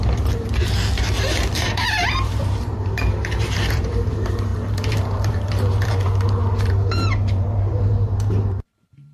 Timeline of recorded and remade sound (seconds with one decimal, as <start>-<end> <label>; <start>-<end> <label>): 0.0-9.1 remade